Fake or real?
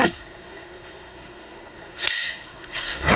fake